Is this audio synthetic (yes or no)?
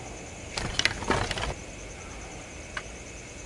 no